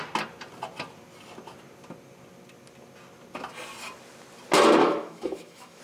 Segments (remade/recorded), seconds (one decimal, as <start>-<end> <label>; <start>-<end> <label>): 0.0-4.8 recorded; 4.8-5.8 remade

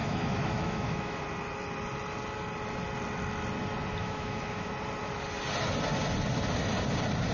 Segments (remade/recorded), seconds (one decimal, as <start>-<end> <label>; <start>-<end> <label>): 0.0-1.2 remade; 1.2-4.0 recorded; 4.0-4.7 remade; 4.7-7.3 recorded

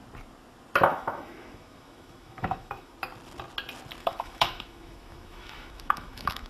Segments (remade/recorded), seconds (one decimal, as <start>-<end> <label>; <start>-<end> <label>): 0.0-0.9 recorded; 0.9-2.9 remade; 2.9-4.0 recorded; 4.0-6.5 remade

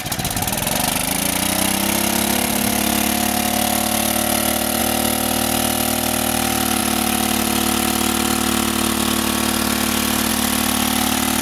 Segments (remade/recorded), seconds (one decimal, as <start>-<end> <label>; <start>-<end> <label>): 0.0-11.4 recorded

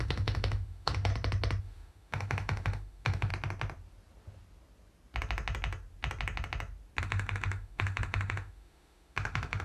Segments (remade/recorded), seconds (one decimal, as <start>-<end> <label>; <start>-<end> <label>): 0.0-1.1 remade; 1.1-1.6 recorded; 1.6-3.3 remade; 3.3-7.0 recorded; 7.0-9.6 remade

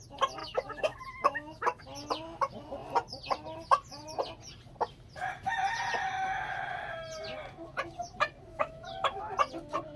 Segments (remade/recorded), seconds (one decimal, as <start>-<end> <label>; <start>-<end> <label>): 0.0-0.4 recorded; 0.4-1.8 remade; 1.8-8.5 recorded; 8.5-9.2 remade; 9.2-10.0 recorded

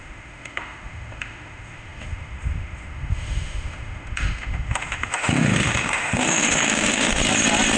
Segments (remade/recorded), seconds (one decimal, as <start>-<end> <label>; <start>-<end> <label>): 0.0-7.2 remade; 7.2-7.8 recorded